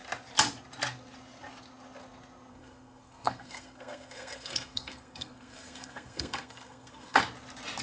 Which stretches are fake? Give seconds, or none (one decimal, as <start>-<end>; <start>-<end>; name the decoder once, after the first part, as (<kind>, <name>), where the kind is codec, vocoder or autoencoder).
2.5-7.2 (codec, SNAC)